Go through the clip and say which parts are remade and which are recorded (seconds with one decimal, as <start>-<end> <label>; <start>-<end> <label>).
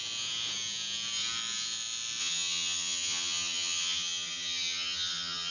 0.0-2.2 recorded; 2.2-5.5 remade